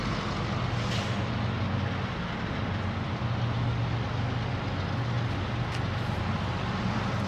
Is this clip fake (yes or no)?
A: no